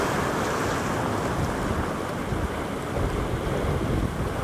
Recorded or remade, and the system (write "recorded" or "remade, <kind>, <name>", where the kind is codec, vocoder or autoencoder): recorded